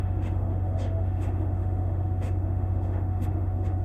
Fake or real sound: fake